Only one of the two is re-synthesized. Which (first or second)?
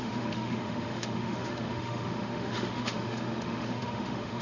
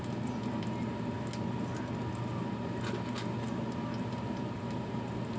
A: first